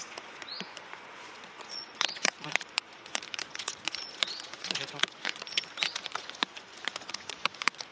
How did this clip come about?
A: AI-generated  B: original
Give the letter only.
A